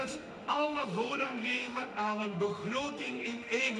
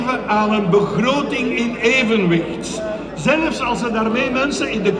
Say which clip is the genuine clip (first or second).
second